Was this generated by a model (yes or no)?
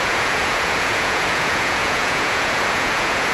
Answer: yes